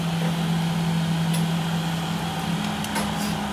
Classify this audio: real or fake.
real